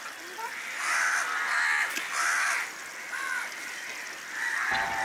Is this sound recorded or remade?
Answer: recorded